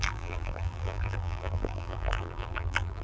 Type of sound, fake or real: fake